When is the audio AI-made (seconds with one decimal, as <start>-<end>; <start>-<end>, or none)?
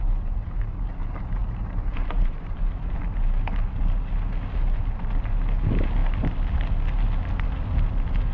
1.4-3.0